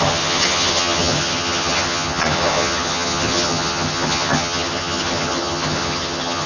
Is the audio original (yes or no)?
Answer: no